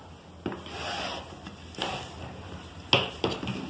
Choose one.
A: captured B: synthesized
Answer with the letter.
A